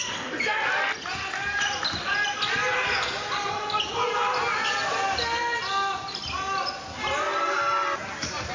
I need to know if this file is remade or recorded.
recorded